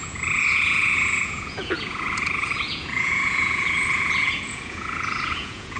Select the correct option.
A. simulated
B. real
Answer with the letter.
A